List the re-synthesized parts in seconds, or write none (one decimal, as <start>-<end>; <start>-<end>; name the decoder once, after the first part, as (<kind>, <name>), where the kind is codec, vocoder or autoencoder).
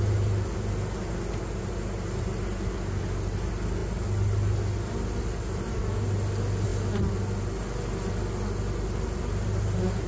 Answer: none